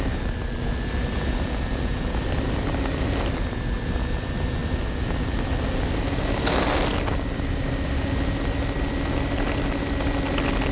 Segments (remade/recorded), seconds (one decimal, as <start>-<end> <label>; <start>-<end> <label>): 0.0-10.7 recorded